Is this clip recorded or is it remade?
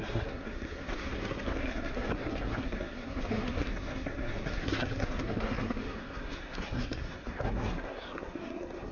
remade